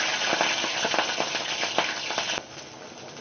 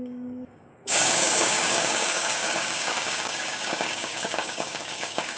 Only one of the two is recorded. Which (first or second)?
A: first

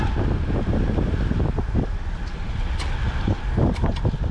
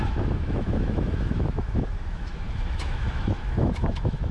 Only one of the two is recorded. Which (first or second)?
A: first